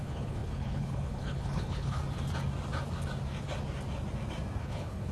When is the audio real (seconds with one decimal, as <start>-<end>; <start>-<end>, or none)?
2.0-4.6